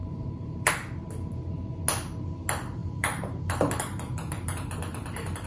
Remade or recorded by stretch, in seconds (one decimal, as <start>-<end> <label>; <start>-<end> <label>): 0.0-0.7 remade; 0.7-2.8 recorded; 2.8-4.8 remade; 4.8-5.5 recorded